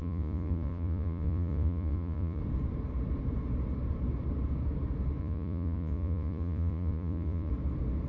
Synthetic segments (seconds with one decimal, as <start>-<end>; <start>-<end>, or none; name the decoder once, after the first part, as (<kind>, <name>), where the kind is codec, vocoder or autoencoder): 0.0-2.4 (vocoder, Vocos); 5.2-7.5